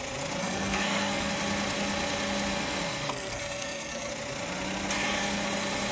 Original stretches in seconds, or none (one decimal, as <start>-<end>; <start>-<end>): 0.0-0.4; 1.3-2.5; 4.1-5.9